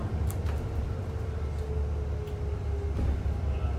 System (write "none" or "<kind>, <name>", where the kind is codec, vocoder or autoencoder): none